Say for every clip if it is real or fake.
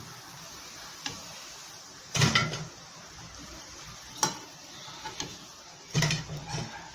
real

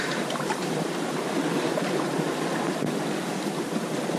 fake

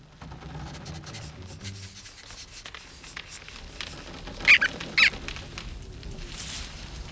real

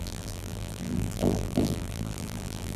fake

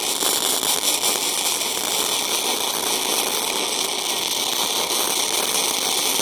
real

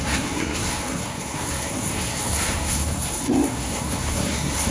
fake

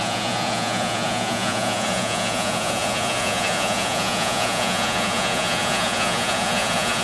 fake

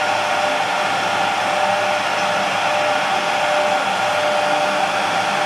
real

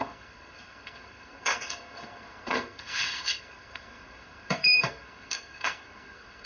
fake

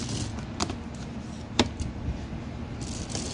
real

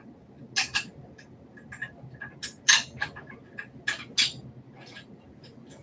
real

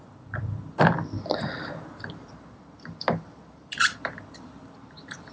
fake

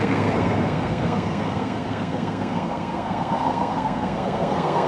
fake